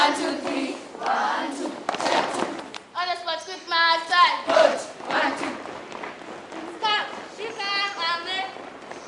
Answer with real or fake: real